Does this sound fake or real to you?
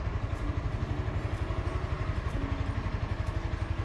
real